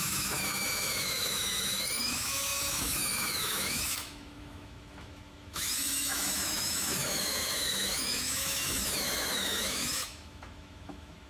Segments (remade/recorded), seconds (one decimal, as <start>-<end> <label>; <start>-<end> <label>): 0.0-11.3 remade